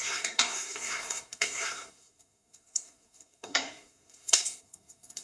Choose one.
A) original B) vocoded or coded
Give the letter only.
B